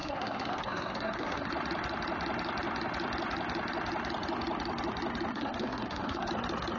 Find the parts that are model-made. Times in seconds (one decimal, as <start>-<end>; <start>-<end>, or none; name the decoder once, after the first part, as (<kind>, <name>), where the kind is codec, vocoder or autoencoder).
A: 0.0-1.5 (codec, SNAC); 5.3-6.3